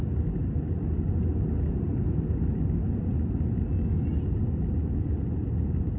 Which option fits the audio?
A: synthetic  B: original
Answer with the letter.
B